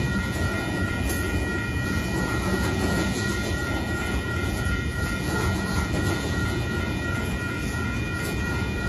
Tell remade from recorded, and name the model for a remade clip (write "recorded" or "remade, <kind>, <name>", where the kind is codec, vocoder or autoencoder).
remade, vocoder, Vocos